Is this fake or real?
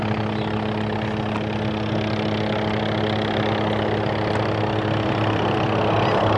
real